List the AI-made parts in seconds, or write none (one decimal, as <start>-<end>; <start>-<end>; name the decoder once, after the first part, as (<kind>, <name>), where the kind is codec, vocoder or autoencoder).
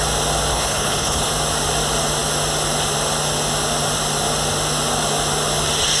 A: 0.5-1.3 (codec, HILCodec)